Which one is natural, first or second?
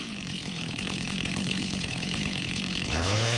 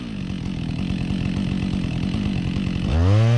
second